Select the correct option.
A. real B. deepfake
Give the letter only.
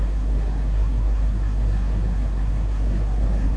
B